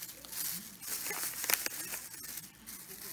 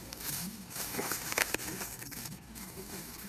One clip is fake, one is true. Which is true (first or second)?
first